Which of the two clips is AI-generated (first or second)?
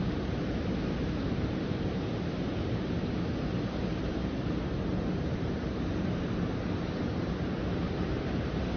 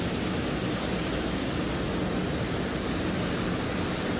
first